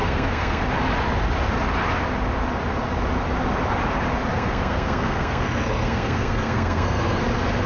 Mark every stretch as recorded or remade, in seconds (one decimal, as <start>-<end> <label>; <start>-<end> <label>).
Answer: 0.0-0.6 remade; 0.6-4.3 recorded; 4.3-7.2 remade; 7.2-7.7 recorded